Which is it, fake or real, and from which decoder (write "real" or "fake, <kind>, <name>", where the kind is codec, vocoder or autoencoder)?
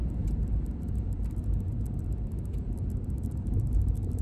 fake, vocoder, BigVGAN v2